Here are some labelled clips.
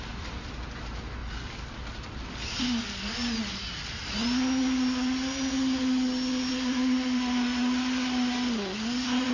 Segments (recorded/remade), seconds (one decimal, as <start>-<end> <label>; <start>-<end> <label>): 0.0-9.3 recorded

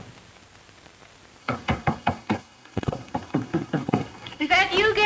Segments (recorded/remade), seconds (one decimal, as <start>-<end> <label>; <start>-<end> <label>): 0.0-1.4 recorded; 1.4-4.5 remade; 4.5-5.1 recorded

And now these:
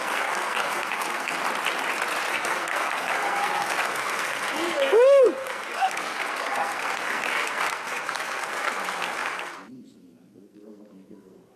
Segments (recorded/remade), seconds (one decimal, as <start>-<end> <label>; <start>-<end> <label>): 0.0-1.4 remade; 1.4-2.3 recorded; 2.3-11.6 remade